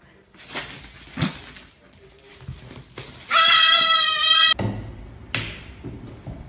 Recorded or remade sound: recorded